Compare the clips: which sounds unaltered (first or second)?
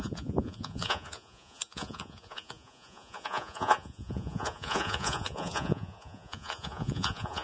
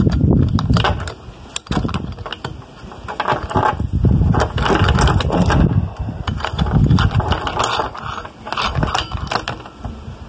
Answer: second